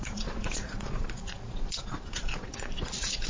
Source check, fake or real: fake